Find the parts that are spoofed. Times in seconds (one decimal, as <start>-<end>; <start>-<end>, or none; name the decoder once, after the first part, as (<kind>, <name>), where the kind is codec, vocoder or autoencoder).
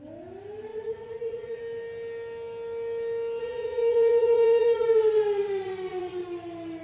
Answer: 0.7-1.6 (vocoder, Vocos); 3.4-6.2